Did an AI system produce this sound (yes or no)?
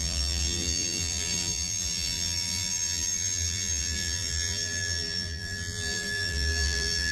yes